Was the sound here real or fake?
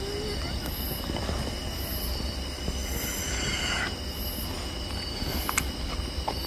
real